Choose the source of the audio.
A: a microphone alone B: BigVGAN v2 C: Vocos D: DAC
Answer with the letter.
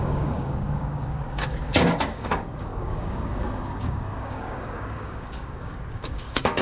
D